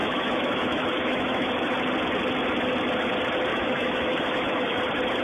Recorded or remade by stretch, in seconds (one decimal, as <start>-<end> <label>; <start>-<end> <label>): 0.0-1.5 remade; 1.5-3.5 recorded; 3.5-4.8 remade; 4.8-5.2 recorded